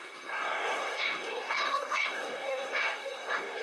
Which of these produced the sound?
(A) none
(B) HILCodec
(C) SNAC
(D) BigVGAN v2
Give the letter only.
C